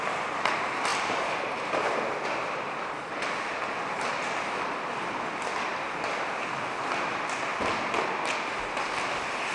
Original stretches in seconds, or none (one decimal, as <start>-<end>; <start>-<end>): 0.0-9.5